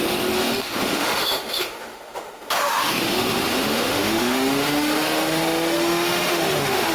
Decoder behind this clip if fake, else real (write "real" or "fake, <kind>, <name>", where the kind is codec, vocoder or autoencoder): fake, autoencoder, DAC-VAE